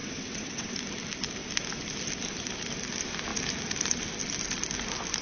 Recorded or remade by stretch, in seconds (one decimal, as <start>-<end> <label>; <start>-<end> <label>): 0.0-0.7 remade; 0.7-5.2 recorded